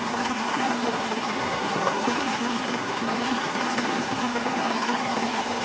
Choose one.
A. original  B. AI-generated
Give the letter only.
B